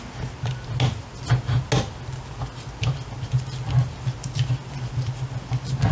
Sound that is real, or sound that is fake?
real